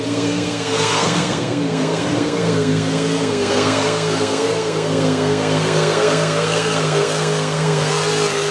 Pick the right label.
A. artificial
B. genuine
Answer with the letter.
A